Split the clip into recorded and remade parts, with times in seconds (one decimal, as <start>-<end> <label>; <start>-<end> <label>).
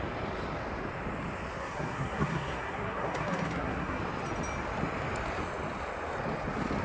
0.0-1.6 recorded; 1.6-4.0 remade; 4.0-6.8 recorded